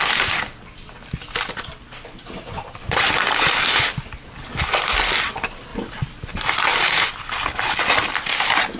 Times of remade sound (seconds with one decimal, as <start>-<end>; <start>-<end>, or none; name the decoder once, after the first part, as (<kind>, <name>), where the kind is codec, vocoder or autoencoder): none